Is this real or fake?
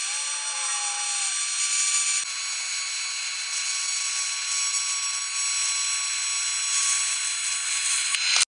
real